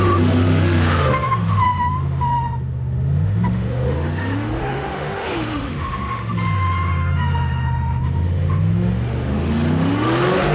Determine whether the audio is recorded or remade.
remade